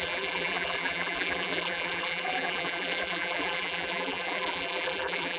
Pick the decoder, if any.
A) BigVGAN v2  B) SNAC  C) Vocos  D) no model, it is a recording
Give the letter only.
A